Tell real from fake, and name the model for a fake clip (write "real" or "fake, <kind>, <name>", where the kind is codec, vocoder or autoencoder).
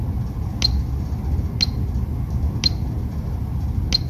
real